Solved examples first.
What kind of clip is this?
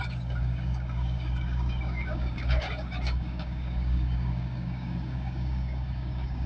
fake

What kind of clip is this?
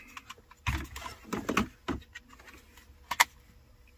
real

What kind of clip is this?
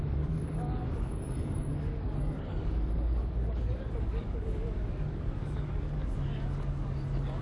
fake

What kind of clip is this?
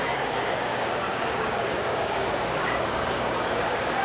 fake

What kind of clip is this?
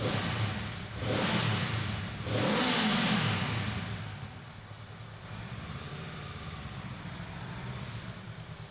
real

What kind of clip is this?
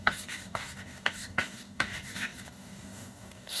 fake